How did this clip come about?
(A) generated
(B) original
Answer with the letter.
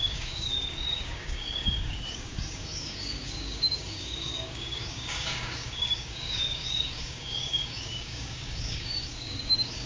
A